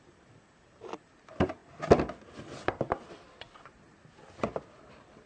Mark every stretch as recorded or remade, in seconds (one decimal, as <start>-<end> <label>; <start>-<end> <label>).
0.0-5.3 recorded

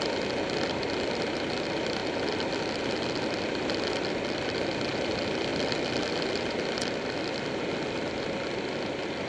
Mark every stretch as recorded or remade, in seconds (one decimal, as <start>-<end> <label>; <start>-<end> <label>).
0.0-9.3 recorded